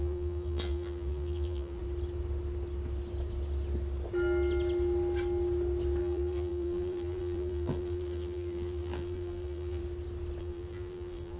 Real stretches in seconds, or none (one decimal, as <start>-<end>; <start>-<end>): 1.8-6.0; 9.8-10.4